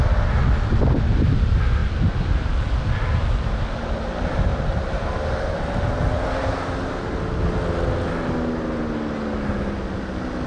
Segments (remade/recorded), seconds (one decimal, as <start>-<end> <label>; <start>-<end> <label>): 0.0-10.5 recorded